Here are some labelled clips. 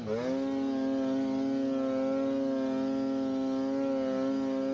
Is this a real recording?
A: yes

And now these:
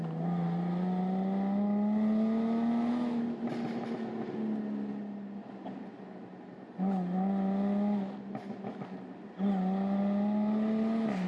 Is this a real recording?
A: yes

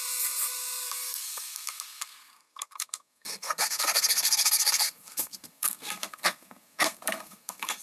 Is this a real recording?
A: no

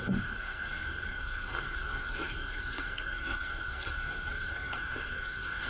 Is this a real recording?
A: no